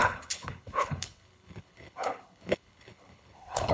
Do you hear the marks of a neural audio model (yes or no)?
yes